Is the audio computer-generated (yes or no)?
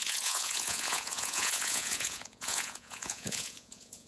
yes